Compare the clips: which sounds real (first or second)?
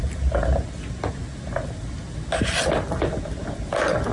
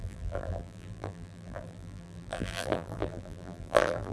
first